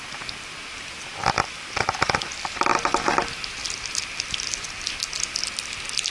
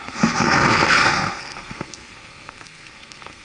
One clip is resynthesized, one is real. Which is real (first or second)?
first